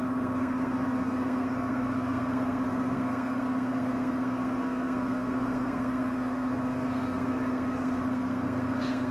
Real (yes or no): no